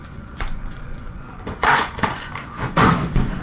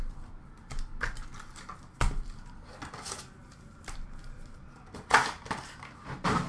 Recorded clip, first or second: second